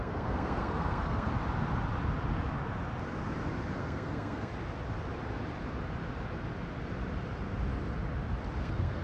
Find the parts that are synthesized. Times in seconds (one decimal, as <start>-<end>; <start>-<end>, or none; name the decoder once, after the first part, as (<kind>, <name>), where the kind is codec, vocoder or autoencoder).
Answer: 0.0-1.3 (codec, SNAC); 3.8-4.5; 8.6-9.0